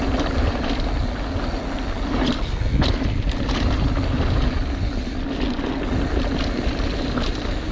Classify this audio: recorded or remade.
recorded